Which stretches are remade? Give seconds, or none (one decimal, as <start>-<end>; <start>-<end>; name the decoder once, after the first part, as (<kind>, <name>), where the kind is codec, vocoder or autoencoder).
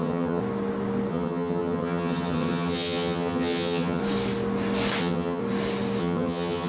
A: 0.0-0.4 (vocoder, HiFi-GAN); 1.1-4.0; 5.0-5.4; 6.0-6.7